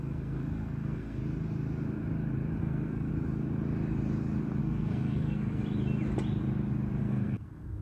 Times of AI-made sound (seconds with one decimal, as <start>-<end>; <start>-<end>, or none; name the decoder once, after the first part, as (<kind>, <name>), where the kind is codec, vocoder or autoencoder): 0.0-1.2 (codec, SNAC); 2.6-3.1; 4.6-5.6; 7.0-7.8